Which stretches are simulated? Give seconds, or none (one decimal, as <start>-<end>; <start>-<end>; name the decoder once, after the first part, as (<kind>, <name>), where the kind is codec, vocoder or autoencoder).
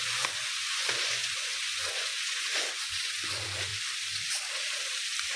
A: 0.0-3.7 (vocoder, Vocos)